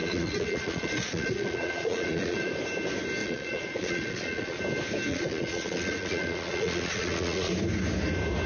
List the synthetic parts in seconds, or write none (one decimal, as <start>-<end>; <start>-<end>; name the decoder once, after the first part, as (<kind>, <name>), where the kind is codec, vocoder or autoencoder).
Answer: 0.0-2.5 (vocoder, Vocos); 3.2-4.6; 5.1-7.5